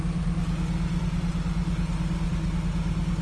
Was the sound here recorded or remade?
recorded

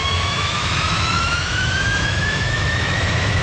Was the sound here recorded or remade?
remade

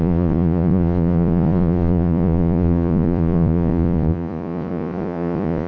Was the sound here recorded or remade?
remade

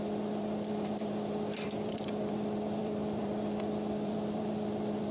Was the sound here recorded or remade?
remade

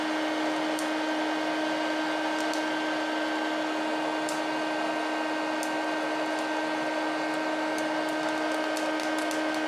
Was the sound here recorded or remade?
recorded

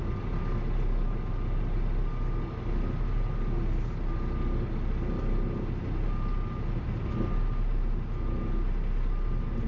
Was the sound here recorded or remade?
recorded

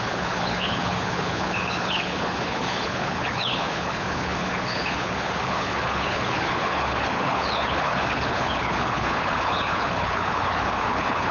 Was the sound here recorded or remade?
remade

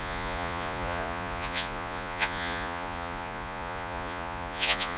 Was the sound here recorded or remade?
remade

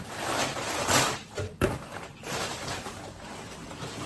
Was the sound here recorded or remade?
remade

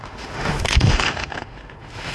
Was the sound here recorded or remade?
remade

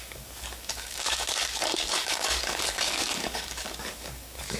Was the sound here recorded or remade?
remade